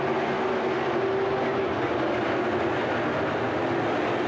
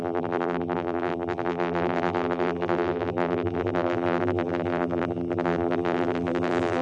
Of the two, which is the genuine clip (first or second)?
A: first